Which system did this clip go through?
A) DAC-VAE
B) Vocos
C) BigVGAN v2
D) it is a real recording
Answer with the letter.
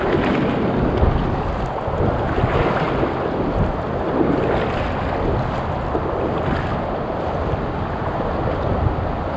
D